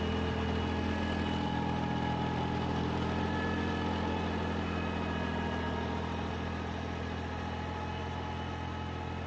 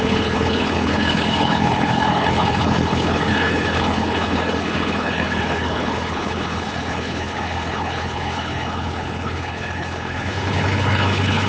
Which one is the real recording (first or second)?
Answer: first